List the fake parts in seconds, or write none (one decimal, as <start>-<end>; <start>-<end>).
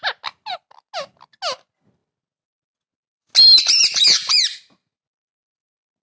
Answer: none